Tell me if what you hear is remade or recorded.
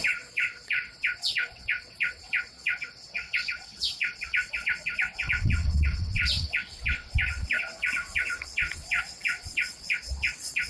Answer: remade